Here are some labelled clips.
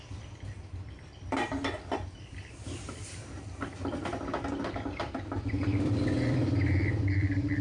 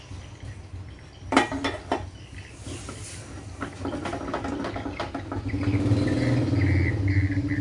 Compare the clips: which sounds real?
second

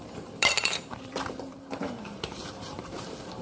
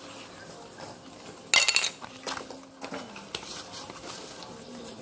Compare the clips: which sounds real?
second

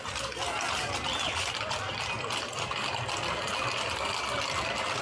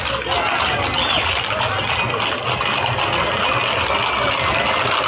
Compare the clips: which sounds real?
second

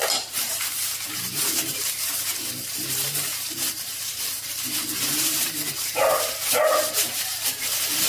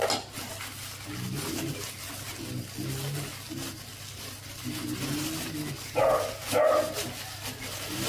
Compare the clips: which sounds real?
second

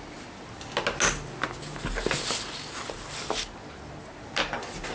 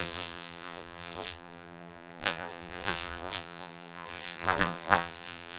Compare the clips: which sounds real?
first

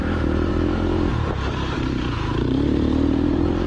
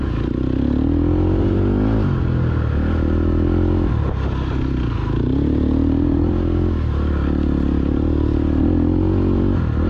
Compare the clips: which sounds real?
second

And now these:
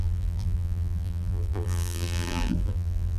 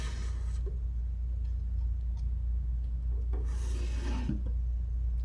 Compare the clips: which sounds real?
second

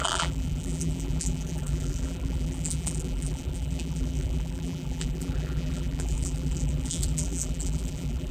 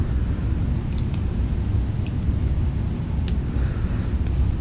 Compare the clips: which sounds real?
second